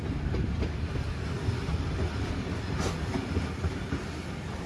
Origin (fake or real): real